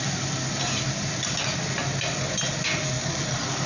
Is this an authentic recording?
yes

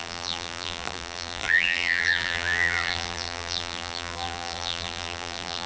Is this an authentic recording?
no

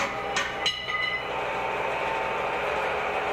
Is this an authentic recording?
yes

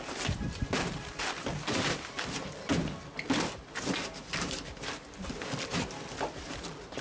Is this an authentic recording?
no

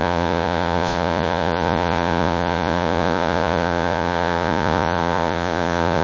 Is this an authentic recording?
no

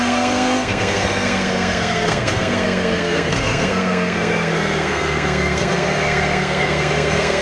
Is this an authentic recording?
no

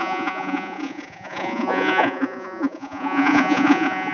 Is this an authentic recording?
no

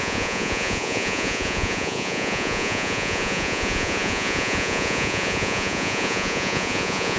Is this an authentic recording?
no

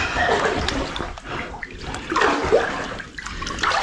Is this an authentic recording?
yes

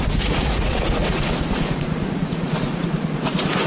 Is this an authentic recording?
no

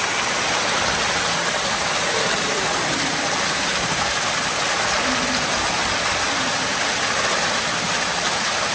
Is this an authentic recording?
yes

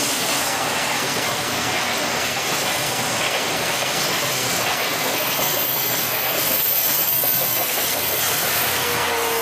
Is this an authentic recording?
no